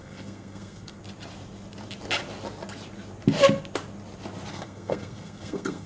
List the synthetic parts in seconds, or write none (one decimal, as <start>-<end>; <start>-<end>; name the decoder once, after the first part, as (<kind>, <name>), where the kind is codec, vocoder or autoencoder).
0.0-1.0 (codec, SNAC); 4.5-5.9